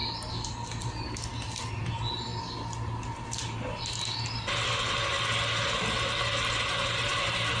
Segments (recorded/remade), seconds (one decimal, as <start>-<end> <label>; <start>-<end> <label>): 0.0-7.6 recorded